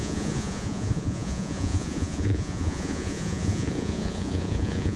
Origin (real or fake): fake